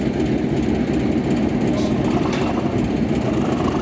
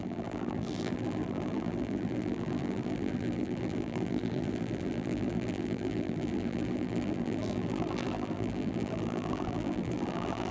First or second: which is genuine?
first